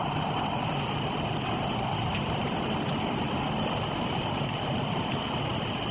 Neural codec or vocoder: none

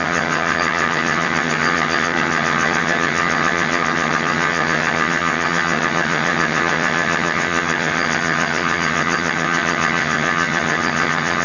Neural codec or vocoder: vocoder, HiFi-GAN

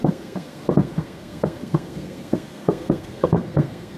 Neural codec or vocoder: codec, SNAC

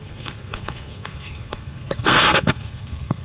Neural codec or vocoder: codec, SNAC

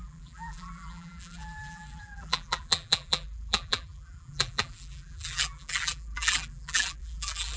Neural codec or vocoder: vocoder, BigVGAN v2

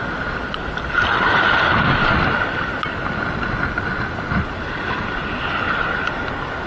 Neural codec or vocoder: none